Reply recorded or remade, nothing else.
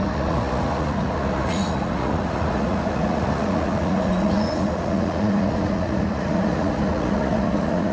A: remade